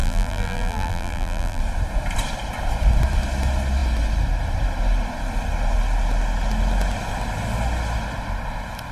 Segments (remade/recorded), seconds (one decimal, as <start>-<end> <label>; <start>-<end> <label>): 0.0-1.6 remade; 1.6-8.9 recorded